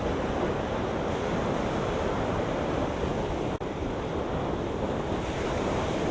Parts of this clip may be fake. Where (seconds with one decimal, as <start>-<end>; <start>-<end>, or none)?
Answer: none